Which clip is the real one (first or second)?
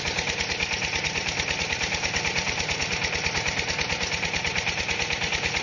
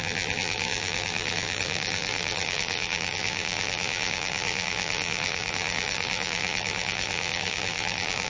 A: first